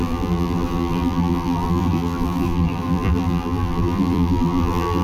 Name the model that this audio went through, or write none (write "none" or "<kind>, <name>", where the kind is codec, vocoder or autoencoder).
vocoder, BigVGAN v2